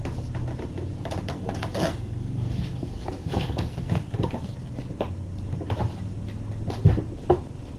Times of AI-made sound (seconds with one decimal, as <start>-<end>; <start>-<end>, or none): 1.3-4.5